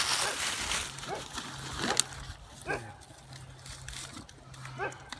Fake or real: real